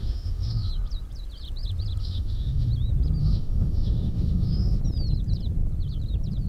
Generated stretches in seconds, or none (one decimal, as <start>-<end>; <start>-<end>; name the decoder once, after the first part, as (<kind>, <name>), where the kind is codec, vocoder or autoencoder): 0.0-0.7 (autoencoder, DAC-VAE); 2.0-2.7; 3.2-4.8